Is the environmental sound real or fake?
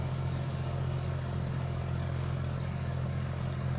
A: fake